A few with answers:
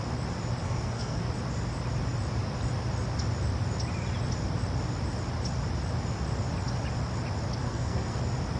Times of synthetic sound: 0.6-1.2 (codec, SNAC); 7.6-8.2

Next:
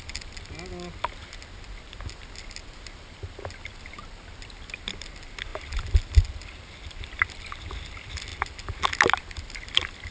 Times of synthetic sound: none